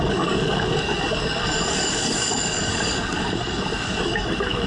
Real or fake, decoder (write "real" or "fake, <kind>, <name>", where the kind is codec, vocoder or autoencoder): fake, codec, DAC